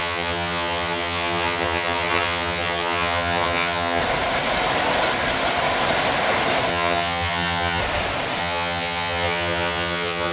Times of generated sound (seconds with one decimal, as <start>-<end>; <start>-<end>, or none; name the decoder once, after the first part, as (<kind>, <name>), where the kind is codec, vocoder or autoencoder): 0.0-4.0 (vocoder, HiFi-GAN); 6.7-7.8; 8.4-10.3

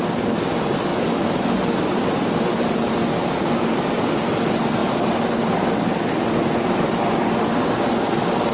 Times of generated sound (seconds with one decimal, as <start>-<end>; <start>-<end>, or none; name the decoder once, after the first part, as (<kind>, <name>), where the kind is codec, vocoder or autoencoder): none

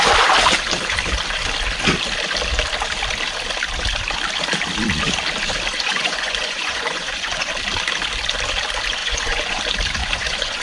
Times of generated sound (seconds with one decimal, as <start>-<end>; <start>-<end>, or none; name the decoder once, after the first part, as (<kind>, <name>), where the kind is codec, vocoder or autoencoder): 5.7-7.5 (vocoder, Vocos); 9.0-9.6; 10.0-10.6